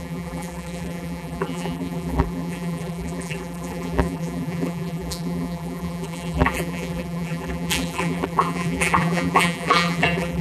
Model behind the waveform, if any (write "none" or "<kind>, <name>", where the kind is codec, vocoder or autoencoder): vocoder, BigVGAN v2